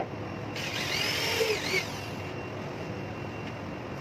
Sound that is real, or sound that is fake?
real